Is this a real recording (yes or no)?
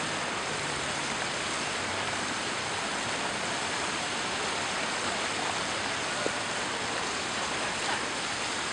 yes